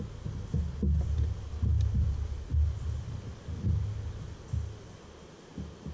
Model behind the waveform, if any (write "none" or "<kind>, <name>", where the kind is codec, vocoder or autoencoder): none